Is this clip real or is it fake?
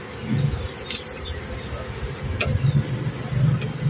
real